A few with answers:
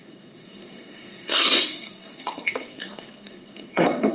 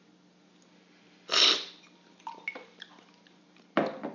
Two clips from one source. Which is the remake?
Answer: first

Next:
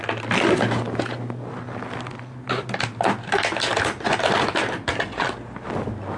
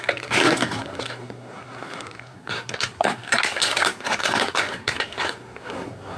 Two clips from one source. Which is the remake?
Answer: second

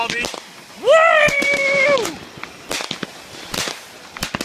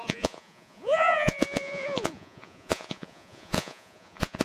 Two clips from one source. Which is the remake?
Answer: second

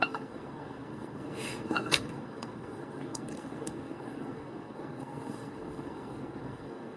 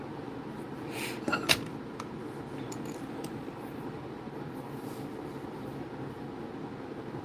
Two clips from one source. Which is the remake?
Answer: first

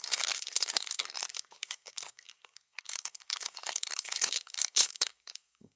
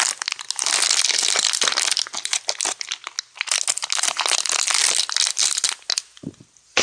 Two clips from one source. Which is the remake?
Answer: first